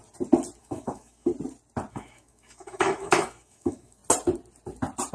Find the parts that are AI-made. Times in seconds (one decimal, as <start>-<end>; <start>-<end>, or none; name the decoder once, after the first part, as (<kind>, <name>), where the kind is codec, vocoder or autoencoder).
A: 0.6-1.3 (autoencoder, DAC-VAE); 1.9-4.0